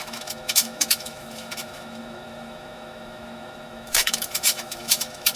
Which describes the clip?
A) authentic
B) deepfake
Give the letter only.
B